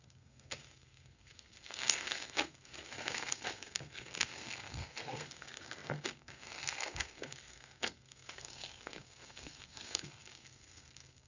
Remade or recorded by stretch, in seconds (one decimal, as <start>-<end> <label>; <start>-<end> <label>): 0.0-11.3 remade